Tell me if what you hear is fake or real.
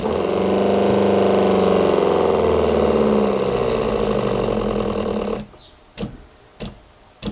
real